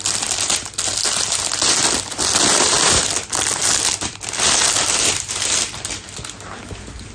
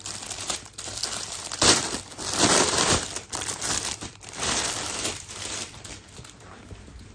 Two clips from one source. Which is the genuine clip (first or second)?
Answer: first